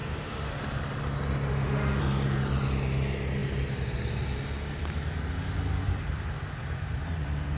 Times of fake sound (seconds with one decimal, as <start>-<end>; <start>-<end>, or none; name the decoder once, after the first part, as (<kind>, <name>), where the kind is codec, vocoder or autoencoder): 0.0-0.5 (autoencoder, DAC-VAE); 1.5-2.0